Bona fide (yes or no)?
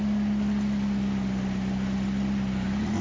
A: yes